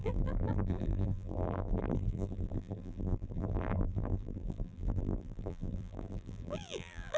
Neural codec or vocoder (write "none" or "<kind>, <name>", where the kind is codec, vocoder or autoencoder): vocoder, BigVGAN v2